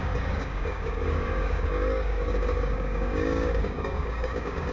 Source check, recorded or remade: remade